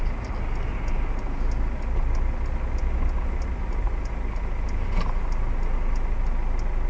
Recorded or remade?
recorded